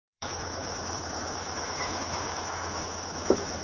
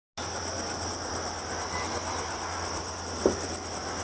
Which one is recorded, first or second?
second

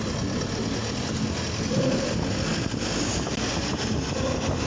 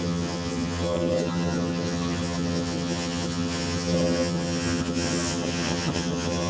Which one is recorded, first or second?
first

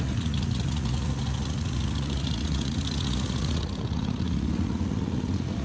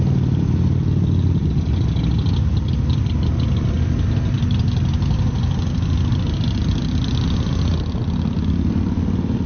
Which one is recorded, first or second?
second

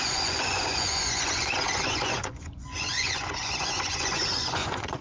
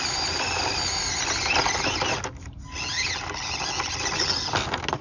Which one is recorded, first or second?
second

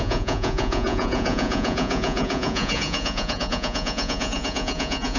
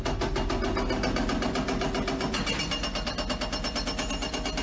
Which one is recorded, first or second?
second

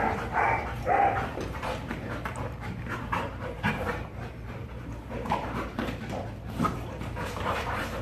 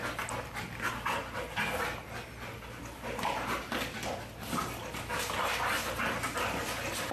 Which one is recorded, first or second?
second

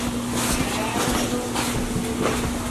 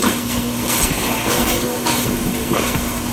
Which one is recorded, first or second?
first